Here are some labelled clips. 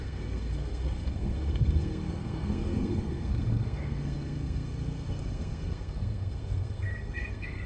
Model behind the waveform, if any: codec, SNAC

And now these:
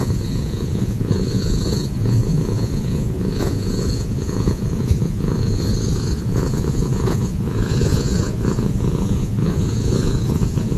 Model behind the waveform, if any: vocoder, Vocos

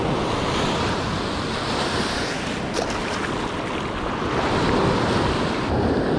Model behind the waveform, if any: none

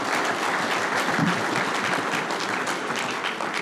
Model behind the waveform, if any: none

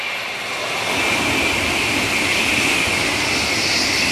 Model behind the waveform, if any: none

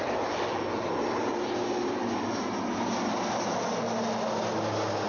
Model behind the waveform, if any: none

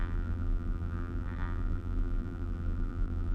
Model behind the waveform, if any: vocoder, BigVGAN v2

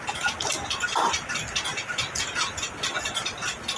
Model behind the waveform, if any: none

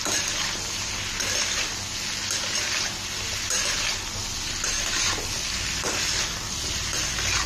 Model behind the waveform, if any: none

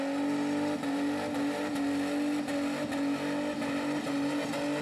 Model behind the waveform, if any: none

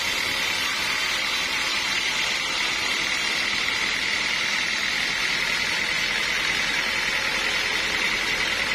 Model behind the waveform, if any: none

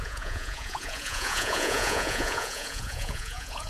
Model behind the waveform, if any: vocoder, Vocos